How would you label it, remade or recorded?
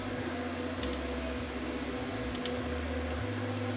recorded